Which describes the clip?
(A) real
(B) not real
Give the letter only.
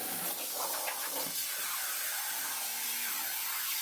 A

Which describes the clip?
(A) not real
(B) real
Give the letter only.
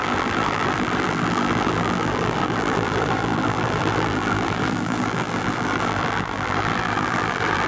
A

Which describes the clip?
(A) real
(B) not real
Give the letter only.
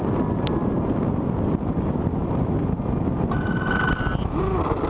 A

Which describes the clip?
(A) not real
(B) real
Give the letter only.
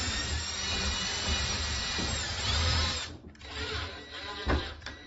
A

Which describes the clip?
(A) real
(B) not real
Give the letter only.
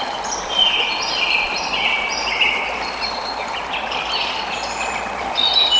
B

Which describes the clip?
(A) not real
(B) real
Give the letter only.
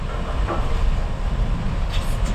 B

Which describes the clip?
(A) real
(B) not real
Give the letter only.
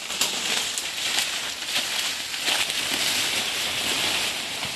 B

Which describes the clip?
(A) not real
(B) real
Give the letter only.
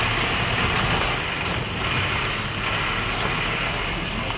B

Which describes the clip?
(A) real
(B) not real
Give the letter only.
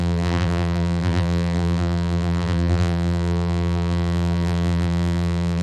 B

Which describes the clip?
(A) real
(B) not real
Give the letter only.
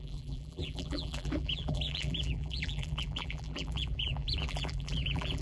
B